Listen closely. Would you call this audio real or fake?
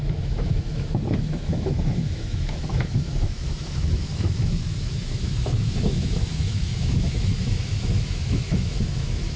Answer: fake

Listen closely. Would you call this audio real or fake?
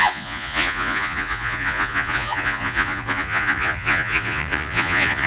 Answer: fake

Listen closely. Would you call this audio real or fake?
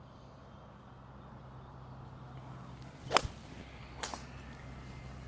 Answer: real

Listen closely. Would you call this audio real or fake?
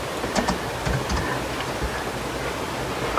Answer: real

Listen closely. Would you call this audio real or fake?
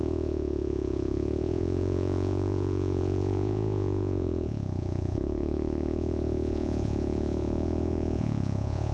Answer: fake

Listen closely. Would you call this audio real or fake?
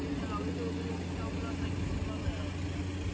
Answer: real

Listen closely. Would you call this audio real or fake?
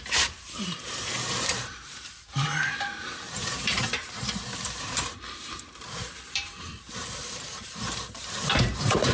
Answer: fake